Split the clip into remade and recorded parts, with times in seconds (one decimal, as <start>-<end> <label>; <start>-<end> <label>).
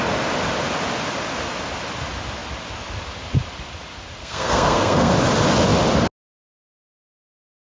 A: 0.0-4.2 recorded; 4.2-5.1 remade; 5.1-7.7 recorded